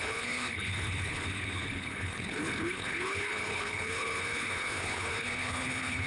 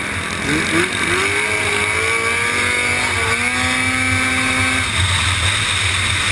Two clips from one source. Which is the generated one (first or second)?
first